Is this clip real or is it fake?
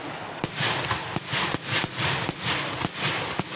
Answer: real